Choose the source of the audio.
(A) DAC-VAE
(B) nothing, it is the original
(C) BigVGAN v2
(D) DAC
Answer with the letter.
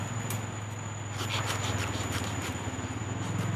B